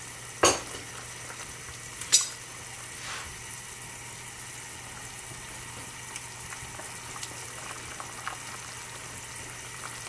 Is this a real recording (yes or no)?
yes